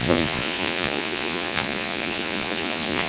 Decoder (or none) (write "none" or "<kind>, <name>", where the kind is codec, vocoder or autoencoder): vocoder, Vocos